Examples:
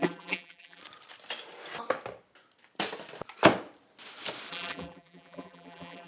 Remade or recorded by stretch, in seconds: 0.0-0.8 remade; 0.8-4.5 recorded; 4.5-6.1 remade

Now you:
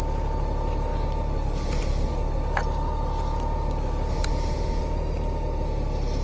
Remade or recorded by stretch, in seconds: 0.0-6.2 recorded